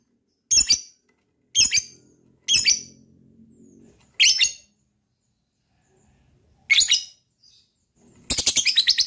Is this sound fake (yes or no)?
no